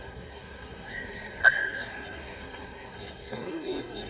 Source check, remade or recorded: remade